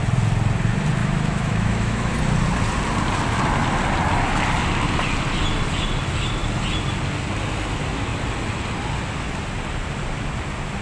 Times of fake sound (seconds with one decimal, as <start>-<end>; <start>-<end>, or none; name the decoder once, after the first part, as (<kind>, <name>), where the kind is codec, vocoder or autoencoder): 1.0-2.2 (autoencoder, DAC-VAE)